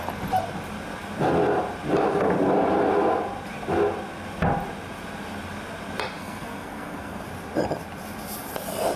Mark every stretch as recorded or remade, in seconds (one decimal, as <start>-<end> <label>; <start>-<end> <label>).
0.0-6.2 recorded; 6.2-7.3 remade; 7.3-9.0 recorded